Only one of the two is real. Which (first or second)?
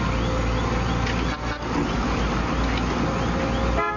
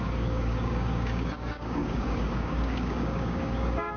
first